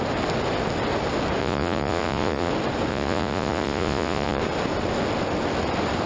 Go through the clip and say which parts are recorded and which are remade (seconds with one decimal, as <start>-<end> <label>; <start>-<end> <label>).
0.0-1.4 recorded; 1.4-2.5 remade; 2.5-2.9 recorded; 2.9-4.4 remade; 4.4-6.1 recorded